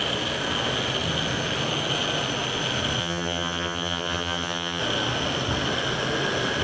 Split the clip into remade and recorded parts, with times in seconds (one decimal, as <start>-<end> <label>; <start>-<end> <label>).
0.0-3.0 recorded; 3.0-4.8 remade; 4.8-6.6 recorded